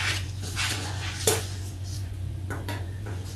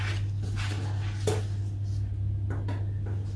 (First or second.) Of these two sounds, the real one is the second